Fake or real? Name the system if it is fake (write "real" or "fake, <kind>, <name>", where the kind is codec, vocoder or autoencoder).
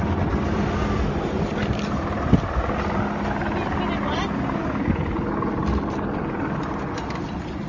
real